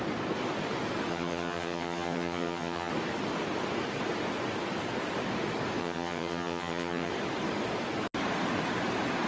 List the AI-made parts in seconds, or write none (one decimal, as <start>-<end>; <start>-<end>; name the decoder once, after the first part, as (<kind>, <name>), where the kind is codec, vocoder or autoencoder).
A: 1.1-2.9 (vocoder, HiFi-GAN); 5.8-7.1